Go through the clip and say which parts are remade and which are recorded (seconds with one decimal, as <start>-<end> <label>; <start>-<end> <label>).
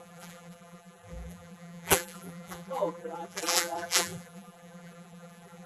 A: 0.0-5.7 remade